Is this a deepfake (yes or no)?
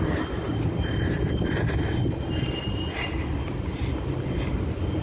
no